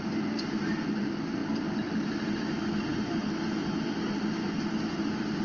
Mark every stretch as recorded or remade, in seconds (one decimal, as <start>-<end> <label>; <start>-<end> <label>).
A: 0.0-5.4 recorded